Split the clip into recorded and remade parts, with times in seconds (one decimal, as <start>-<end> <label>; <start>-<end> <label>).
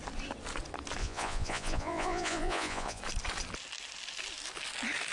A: 0.0-1.0 recorded; 1.0-3.0 remade; 3.0-5.1 recorded